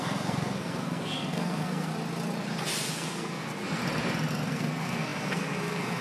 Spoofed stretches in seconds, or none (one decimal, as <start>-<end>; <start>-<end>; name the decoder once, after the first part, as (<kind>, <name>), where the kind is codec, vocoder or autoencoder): 0.0-1.9 (codec, SNAC); 2.9-3.8; 4.3-6.0